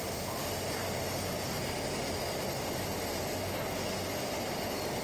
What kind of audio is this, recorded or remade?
recorded